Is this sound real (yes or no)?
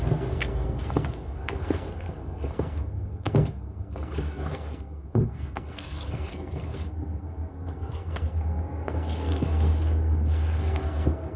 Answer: no